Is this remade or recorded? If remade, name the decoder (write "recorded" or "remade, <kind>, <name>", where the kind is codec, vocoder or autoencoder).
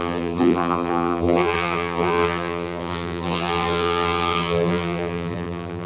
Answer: remade, vocoder, BigVGAN v2